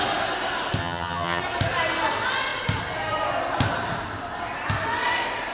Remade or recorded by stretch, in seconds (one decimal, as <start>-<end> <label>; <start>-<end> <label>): 0.0-0.8 recorded; 0.8-1.4 remade; 1.4-5.5 recorded